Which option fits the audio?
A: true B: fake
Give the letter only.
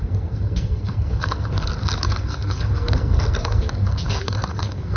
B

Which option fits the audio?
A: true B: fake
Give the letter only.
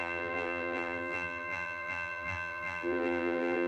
B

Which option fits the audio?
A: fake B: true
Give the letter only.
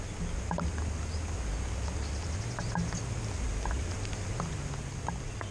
B